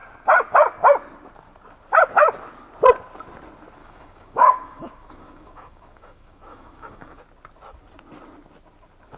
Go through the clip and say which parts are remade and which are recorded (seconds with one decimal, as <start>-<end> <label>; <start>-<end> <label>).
0.0-3.8 recorded; 3.8-7.2 remade; 7.2-9.2 recorded